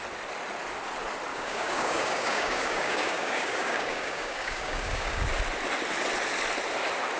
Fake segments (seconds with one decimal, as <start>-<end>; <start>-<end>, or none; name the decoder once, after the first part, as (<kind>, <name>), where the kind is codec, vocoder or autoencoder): 1.3-5.3 (codec, DAC)